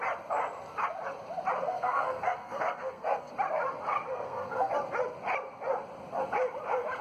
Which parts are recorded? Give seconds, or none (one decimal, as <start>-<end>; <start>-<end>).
0.0-1.6; 3.3-4.1; 4.7-7.0